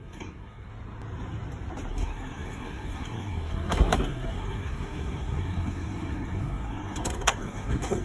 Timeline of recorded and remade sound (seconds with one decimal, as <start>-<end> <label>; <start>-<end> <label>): 0.0-0.7 remade; 0.7-1.9 recorded; 1.9-8.0 remade